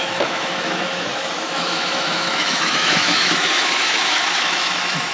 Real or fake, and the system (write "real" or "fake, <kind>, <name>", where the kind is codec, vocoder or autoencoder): fake, autoencoder, DAC-VAE